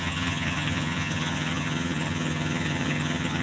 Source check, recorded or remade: remade